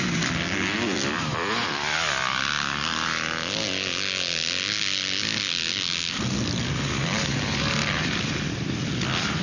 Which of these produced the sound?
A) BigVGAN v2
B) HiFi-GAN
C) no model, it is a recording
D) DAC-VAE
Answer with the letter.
C